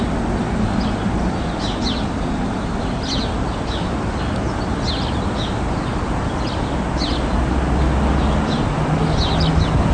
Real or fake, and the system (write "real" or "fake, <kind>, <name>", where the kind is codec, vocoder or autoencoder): real